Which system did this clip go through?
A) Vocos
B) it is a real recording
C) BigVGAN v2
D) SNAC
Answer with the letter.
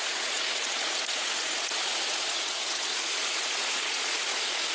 A